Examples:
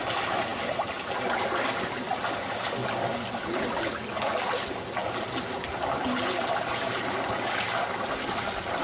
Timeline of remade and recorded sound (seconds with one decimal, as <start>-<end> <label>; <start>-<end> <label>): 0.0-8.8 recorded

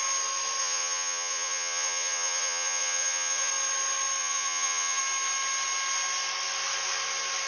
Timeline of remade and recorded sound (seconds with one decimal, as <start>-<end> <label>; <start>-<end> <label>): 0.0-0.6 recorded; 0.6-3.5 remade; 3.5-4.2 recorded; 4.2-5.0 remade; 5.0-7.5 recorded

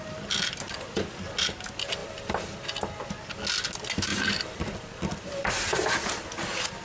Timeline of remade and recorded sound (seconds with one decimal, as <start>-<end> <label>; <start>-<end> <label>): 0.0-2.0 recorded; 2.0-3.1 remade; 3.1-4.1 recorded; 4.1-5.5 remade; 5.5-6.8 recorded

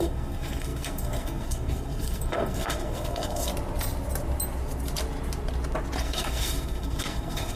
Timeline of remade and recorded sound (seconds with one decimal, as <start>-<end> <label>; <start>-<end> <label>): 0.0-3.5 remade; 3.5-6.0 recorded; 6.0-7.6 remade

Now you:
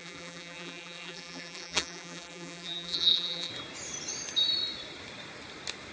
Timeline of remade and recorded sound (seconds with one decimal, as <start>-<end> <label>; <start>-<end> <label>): 0.0-3.5 remade; 3.5-5.9 recorded

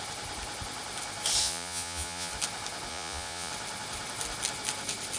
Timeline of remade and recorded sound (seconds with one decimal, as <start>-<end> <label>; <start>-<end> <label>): 0.0-1.4 recorded; 1.4-2.3 remade; 2.3-2.9 recorded; 2.9-3.5 remade; 3.5-5.2 recorded

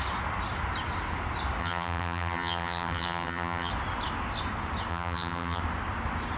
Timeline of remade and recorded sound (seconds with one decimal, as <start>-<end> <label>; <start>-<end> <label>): 0.0-1.6 recorded; 1.6-3.7 remade; 3.7-4.9 recorded; 4.9-5.6 remade; 5.6-6.4 recorded